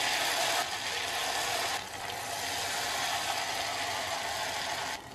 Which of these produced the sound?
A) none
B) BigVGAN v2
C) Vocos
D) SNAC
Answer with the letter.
A